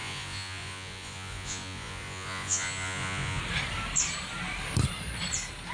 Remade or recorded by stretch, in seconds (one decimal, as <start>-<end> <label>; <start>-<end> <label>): 0.0-3.4 remade; 3.4-5.7 recorded